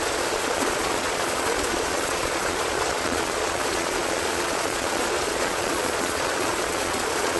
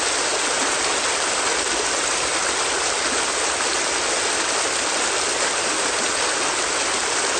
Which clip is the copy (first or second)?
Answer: first